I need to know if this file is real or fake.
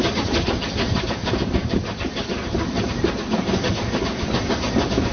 real